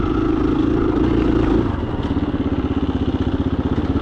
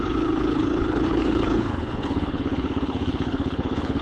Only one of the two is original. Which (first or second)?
first